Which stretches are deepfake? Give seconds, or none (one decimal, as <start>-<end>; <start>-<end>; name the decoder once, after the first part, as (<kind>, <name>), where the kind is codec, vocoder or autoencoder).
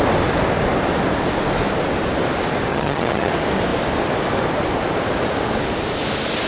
2.7-3.3 (vocoder, HiFi-GAN)